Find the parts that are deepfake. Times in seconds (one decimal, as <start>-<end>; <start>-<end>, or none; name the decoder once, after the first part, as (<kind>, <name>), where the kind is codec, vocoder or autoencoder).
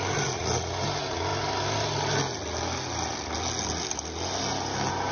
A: none